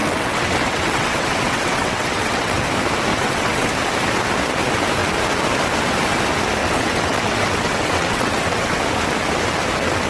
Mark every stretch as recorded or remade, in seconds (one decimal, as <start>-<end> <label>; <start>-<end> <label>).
0.0-2.6 remade; 2.6-3.1 recorded; 3.1-3.7 remade; 3.7-6.6 recorded; 6.6-8.8 remade; 8.8-10.1 recorded